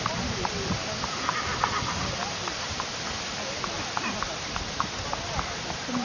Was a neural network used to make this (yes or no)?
no